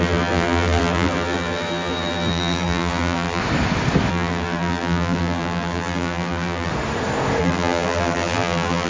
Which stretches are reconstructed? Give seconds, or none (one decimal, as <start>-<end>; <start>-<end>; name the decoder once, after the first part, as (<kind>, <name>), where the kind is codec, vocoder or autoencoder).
0.0-3.4 (vocoder, BigVGAN v2); 4.1-6.7; 7.4-8.9